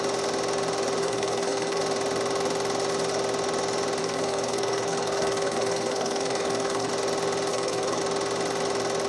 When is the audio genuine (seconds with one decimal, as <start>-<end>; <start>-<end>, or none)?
0.0-1.0; 1.8-4.0; 6.9-7.5; 8.0-9.1